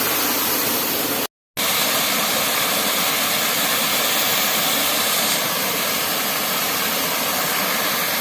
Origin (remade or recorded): recorded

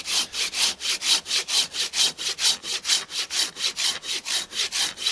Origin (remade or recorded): recorded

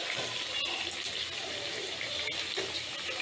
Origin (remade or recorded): recorded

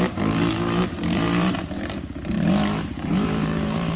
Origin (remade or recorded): remade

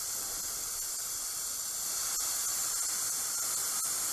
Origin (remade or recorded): recorded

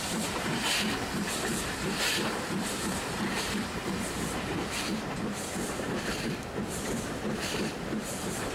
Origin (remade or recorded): remade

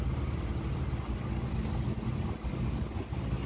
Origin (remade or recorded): recorded